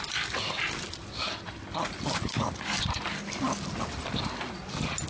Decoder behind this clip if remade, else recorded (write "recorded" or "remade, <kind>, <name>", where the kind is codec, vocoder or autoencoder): recorded